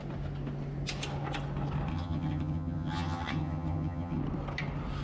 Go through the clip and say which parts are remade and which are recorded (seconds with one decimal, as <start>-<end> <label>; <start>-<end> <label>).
0.0-1.9 recorded; 1.9-4.2 remade; 4.2-5.0 recorded